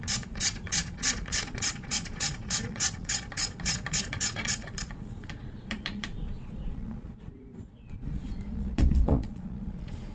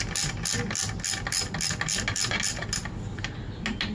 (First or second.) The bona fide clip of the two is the second